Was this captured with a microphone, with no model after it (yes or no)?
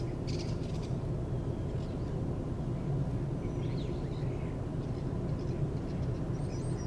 yes